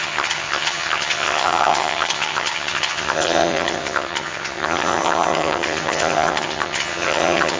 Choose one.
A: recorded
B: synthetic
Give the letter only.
B